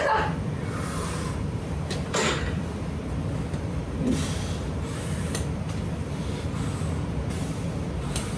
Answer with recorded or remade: remade